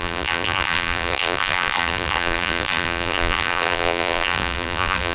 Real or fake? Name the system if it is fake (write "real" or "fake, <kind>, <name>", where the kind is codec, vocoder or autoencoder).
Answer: fake, vocoder, BigVGAN v2